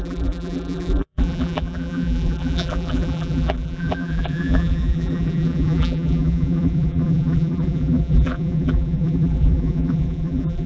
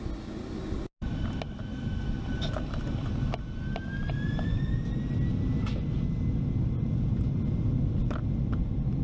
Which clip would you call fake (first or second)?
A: first